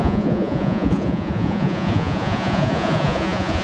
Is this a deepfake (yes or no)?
yes